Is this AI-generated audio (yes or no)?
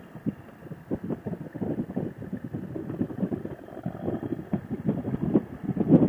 no